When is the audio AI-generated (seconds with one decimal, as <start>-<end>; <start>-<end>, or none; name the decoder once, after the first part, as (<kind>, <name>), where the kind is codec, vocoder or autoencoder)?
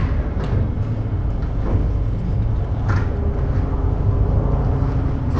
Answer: none